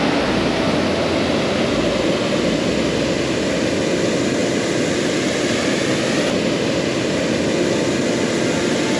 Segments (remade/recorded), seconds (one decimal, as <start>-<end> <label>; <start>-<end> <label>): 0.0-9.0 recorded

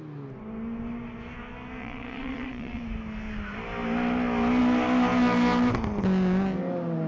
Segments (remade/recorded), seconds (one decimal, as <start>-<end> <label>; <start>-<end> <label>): 0.0-1.8 recorded; 1.8-2.8 remade; 2.8-7.1 recorded

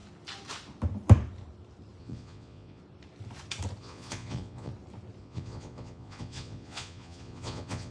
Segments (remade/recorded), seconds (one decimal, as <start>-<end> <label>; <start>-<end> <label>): 0.0-2.0 recorded; 2.0-2.8 remade; 2.8-3.8 recorded; 3.8-4.7 remade; 4.7-5.2 recorded; 5.2-7.9 remade

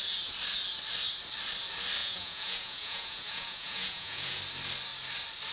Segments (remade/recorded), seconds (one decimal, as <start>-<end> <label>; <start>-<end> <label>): 0.0-2.0 recorded; 2.0-4.4 remade; 4.4-5.5 recorded